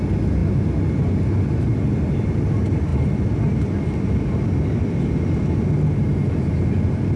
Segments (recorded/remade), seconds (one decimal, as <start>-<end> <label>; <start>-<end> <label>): 0.0-7.2 recorded